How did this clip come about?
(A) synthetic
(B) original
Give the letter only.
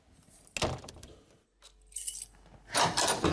B